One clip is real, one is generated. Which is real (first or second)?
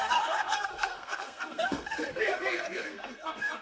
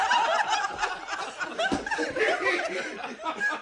second